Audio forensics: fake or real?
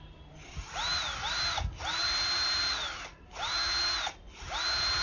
real